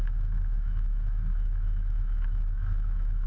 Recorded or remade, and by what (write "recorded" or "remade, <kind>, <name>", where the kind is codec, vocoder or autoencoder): remade, autoencoder, DAC-VAE